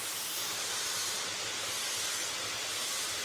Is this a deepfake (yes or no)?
no